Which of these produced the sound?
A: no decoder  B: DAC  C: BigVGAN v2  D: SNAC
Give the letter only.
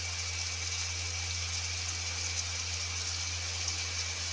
A